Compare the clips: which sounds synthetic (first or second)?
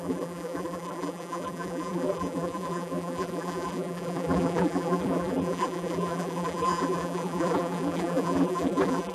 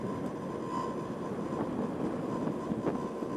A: first